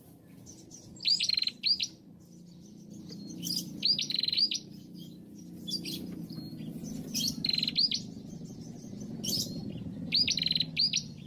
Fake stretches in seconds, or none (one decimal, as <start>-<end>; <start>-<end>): 0.7-1.3

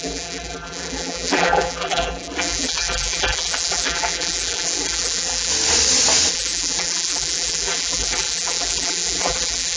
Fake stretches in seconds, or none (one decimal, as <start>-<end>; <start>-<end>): 0.0-5.5; 6.3-9.8

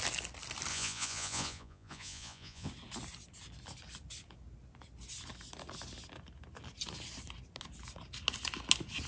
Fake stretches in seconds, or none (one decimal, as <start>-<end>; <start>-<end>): 0.7-2.7

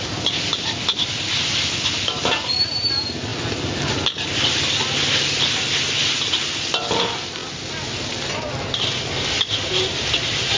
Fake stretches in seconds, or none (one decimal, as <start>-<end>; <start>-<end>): none

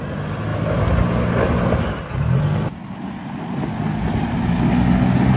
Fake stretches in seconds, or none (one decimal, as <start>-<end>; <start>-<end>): none

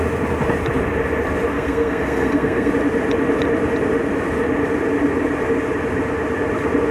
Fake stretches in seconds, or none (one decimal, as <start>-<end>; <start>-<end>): 1.5-2.7